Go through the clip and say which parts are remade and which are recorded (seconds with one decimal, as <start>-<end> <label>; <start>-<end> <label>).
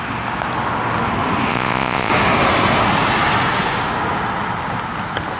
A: 0.0-1.5 recorded; 1.5-2.1 remade; 2.1-5.4 recorded